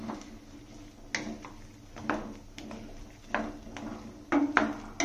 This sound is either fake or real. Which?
real